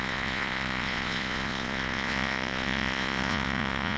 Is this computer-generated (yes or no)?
yes